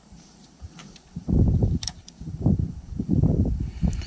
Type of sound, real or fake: fake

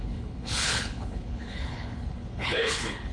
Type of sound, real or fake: fake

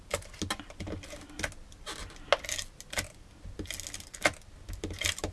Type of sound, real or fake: real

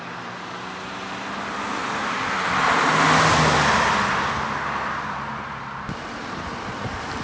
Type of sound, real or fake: real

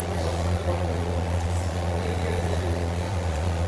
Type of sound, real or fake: fake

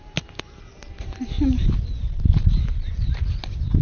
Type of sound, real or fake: real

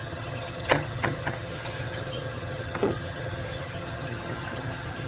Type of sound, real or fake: fake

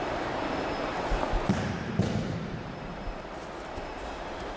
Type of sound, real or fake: fake